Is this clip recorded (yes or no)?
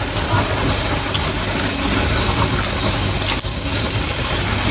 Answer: yes